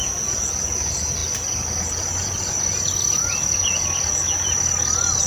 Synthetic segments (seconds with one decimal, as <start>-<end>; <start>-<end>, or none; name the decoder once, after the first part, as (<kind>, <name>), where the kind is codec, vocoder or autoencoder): none